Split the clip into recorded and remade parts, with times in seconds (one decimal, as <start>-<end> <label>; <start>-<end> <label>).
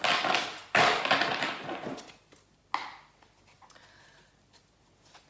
0.0-5.3 recorded